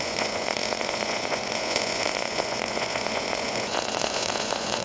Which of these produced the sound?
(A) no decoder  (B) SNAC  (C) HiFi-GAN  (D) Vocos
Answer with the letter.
D